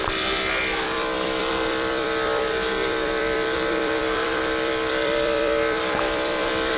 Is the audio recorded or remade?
remade